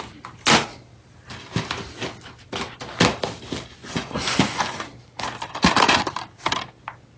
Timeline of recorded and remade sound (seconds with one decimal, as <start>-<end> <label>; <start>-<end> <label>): 0.0-3.8 recorded; 3.8-4.8 remade; 4.8-7.2 recorded